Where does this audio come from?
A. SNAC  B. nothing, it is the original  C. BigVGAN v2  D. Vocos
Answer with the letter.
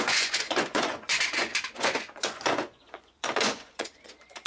D